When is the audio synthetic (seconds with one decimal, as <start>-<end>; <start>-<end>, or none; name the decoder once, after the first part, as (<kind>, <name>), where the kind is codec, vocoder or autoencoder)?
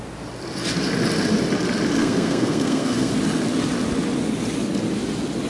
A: 2.0-3.1 (codec, SNAC)